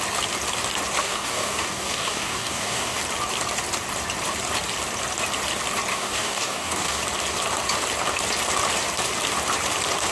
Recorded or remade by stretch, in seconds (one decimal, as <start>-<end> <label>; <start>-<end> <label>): 0.0-1.0 recorded; 1.0-3.0 remade; 3.0-5.9 recorded; 5.9-7.0 remade; 7.0-10.1 recorded

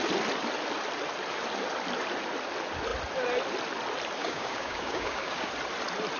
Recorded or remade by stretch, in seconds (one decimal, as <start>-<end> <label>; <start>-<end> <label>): 0.0-4.2 recorded; 4.2-5.5 remade; 5.5-6.2 recorded

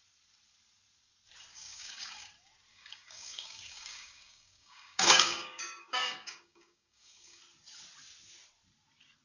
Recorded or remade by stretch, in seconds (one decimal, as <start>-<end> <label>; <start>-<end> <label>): 0.0-1.5 recorded; 1.5-2.3 remade; 2.3-2.7 recorded; 2.7-7.4 remade; 7.4-9.2 recorded

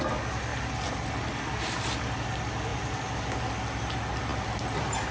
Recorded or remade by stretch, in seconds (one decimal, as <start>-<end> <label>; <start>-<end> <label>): 0.0-5.1 recorded